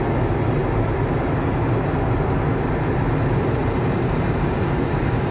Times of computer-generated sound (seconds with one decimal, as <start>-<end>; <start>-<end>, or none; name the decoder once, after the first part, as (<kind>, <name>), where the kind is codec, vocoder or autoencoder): none